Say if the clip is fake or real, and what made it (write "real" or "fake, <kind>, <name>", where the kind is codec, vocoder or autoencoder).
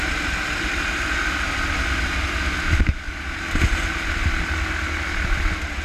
real